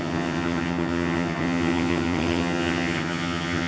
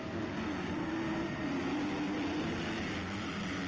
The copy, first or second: first